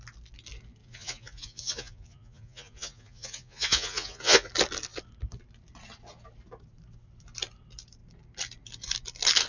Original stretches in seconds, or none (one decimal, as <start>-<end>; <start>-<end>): 0.0-0.8; 4.5-9.5